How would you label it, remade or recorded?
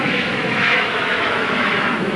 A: remade